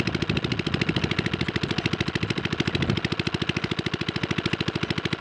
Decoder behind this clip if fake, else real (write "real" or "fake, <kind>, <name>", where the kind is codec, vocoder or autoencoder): real